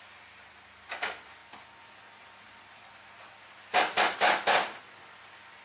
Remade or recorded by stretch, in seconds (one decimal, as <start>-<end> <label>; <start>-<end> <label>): 0.0-5.6 recorded